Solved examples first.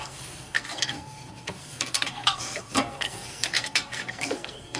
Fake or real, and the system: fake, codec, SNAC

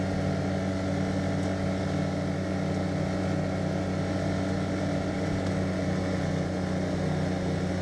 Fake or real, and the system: real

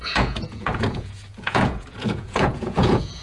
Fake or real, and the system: fake, vocoder, Vocos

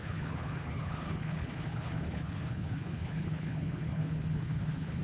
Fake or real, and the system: fake, codec, HILCodec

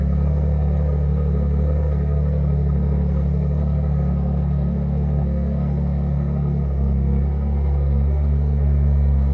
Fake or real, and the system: fake, codec, SNAC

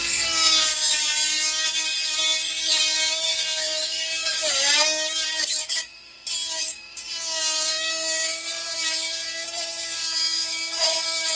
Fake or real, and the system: fake, codec, DAC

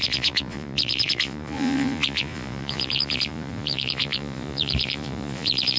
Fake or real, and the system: fake, vocoder, Vocos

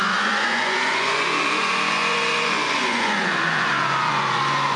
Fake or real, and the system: fake, vocoder, Vocos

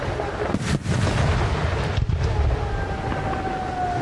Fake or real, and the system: real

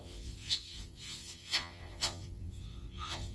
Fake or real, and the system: fake, vocoder, Vocos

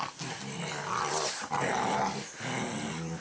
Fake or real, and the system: real